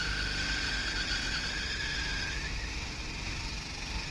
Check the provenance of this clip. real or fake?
real